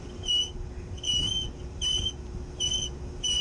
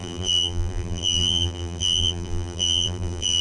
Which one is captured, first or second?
first